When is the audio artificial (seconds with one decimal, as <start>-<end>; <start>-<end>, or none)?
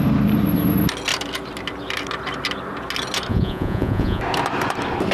3.3-4.2